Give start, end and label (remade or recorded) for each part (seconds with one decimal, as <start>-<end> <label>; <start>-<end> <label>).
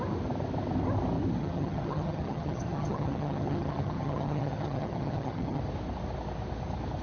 0.0-1.4 recorded; 1.4-5.6 remade; 5.6-7.0 recorded